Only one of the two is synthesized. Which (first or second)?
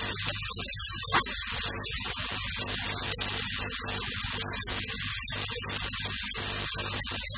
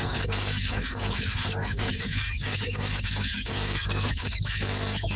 second